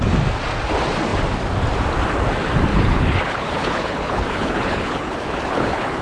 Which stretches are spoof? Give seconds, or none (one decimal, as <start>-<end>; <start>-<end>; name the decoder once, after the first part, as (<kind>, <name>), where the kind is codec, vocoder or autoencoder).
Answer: 2.7-6.0 (codec, HILCodec)

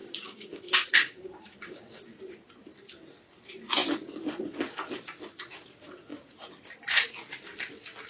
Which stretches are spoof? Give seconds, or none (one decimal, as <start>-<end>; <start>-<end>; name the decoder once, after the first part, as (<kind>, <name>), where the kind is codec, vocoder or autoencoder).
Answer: 0.0-2.0 (codec, DAC)